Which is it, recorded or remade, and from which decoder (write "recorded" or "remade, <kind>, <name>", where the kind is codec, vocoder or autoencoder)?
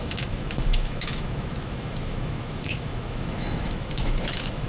remade, autoencoder, DAC-VAE